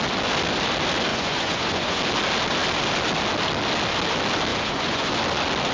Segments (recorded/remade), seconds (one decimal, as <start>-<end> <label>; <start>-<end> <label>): 0.0-1.1 recorded; 1.1-2.0 remade; 2.0-4.5 recorded; 4.5-5.1 remade; 5.1-5.7 recorded